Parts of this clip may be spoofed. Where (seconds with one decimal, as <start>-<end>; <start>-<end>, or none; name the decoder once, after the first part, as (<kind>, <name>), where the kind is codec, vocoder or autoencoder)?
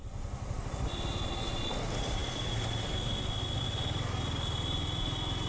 none